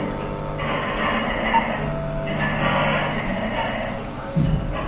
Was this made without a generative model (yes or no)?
yes